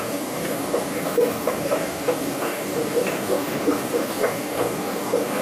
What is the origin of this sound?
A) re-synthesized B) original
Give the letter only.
A